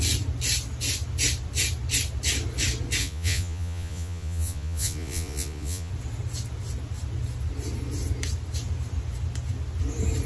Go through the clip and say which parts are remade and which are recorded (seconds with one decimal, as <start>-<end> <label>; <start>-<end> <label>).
0.0-3.0 recorded; 3.0-5.9 remade; 5.9-10.3 recorded